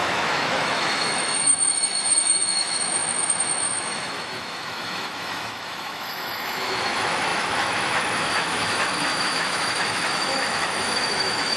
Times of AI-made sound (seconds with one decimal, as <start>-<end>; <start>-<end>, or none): 0.0-11.6